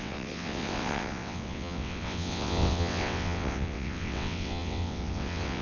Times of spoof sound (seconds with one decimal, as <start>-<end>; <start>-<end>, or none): 0.0-5.6